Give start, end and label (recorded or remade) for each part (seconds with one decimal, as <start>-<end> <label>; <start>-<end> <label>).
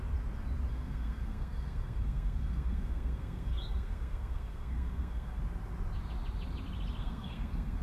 0.0-0.7 recorded; 0.7-5.4 remade; 5.4-7.0 recorded; 7.0-7.8 remade